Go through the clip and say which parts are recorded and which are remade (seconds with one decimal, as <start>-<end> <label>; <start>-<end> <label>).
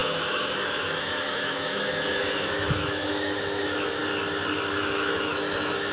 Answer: 0.0-4.0 remade; 4.0-4.7 recorded; 4.7-5.9 remade